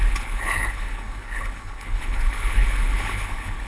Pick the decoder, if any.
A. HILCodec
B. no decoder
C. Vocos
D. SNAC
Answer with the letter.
A